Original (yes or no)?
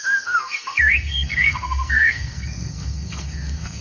no